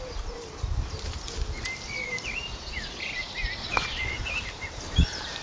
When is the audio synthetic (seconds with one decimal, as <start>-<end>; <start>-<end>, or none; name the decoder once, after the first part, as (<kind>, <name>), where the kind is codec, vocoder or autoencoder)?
3.6-4.2 (vocoder, Vocos)